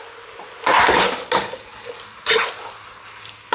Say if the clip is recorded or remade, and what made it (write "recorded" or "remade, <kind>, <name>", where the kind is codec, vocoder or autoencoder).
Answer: recorded